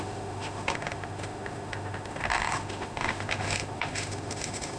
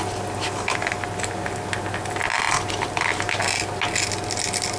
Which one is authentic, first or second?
second